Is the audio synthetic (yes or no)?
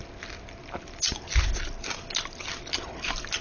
no